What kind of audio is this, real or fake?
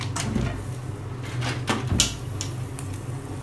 real